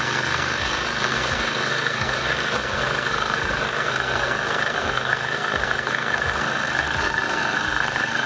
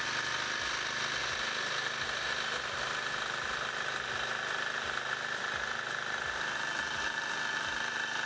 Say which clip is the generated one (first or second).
first